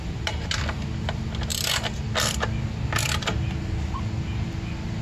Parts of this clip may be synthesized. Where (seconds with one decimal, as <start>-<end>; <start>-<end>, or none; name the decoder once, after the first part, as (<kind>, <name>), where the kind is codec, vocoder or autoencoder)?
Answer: none